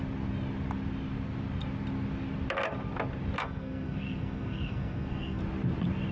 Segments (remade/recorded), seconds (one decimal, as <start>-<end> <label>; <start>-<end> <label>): 0.0-3.4 recorded; 3.4-5.4 remade; 5.4-6.1 recorded